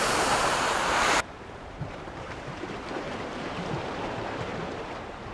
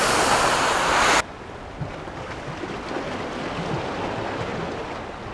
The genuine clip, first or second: second